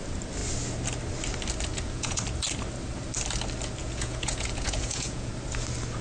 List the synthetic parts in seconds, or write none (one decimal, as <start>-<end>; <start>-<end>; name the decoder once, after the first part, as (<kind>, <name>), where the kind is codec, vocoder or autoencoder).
1.7-2.2 (vocoder, Vocos); 3.8-5.3